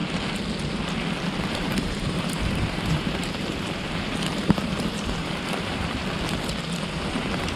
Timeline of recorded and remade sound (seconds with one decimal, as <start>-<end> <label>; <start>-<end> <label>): 0.0-1.5 recorded; 1.5-6.0 remade; 6.0-6.8 recorded; 6.8-7.6 remade